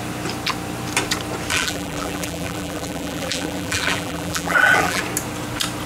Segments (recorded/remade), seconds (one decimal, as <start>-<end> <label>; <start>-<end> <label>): 0.0-1.5 recorded; 1.5-5.0 remade; 5.0-5.9 recorded